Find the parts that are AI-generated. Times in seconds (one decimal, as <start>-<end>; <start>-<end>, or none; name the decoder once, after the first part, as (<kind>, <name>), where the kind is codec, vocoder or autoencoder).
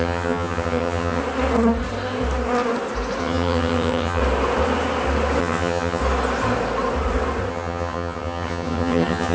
0.0-1.2 (vocoder, HiFi-GAN); 3.2-4.2; 5.4-6.0; 7.5-9.3